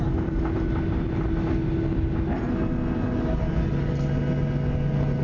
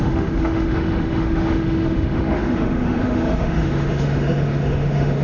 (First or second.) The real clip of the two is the first